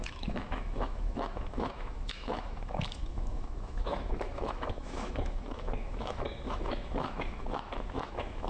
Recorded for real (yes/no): no